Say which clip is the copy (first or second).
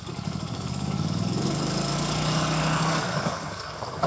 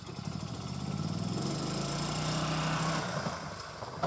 first